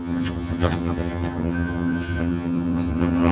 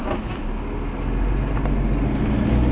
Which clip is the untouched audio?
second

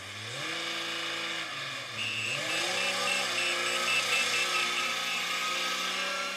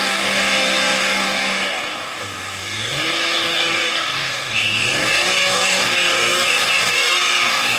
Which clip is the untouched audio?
first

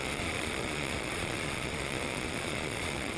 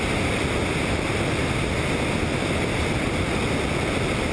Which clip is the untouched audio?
second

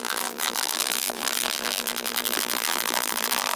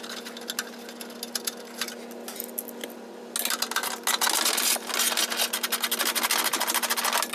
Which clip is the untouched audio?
second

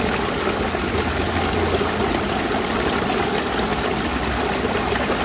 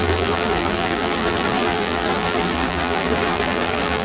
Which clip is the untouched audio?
first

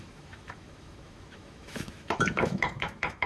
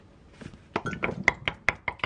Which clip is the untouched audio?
second